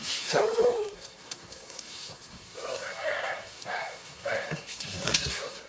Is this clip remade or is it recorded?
remade